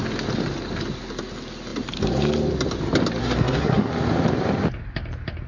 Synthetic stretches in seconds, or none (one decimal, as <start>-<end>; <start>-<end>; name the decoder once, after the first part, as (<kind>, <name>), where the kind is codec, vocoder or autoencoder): 3.2-3.9 (codec, SNAC)